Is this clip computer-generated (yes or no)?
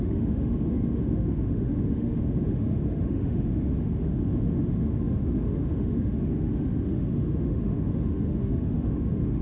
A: yes